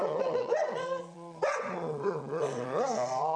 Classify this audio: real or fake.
fake